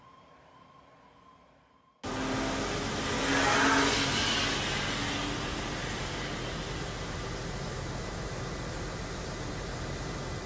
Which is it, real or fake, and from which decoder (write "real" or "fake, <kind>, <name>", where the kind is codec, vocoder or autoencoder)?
real